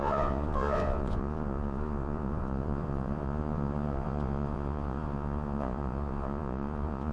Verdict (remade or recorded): remade